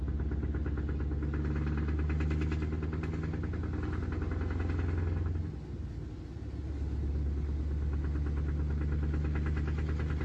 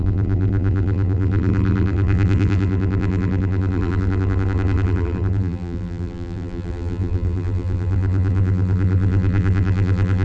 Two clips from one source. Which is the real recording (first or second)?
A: first